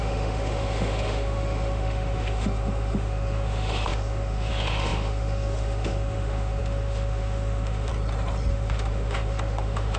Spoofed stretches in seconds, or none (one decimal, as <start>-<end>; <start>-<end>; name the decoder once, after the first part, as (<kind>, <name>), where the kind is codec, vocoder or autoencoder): 0.0-7.9 (autoencoder, DAC-VAE); 8.5-10.0